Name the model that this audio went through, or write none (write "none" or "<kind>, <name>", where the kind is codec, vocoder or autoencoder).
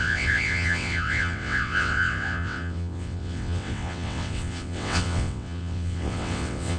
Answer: vocoder, WaveNeXt